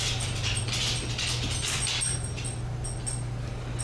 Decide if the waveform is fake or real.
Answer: real